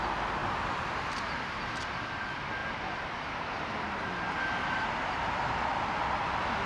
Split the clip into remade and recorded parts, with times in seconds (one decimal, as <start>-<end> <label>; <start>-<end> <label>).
0.0-0.4 recorded; 0.4-1.0 remade; 1.0-6.7 recorded